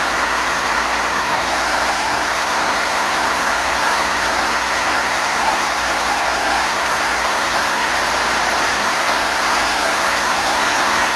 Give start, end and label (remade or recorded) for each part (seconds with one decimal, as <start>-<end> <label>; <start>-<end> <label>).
0.0-7.9 remade; 7.9-8.7 recorded; 8.7-11.2 remade